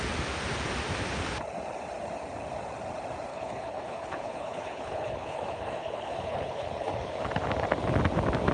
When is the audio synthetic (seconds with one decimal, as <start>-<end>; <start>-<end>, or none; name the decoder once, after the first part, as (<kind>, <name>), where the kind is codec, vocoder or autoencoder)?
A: 3.3-7.2 (codec, HILCodec)